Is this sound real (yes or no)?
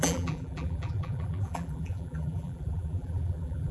no